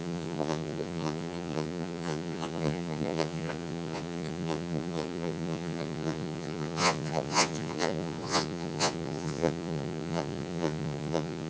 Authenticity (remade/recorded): remade